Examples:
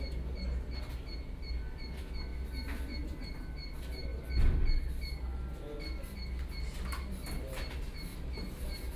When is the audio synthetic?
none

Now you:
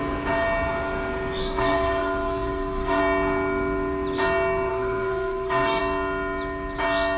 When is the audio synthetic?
1.4-3.0 (codec, SNAC); 4.7-5.8

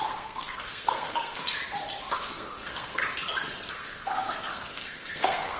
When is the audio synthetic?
0.0-1.5 (codec, SNAC); 2.1-3.0; 3.7-5.6